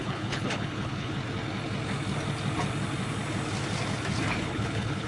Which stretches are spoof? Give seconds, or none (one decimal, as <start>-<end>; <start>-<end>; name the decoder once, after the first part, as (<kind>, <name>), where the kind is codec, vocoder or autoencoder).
0.0-1.2 (codec, HILCodec); 4.3-5.1